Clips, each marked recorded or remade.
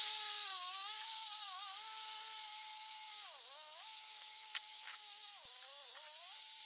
remade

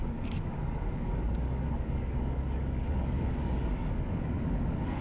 remade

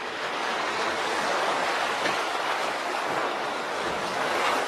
remade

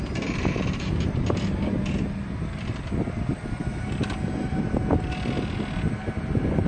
recorded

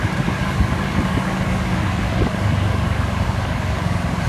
remade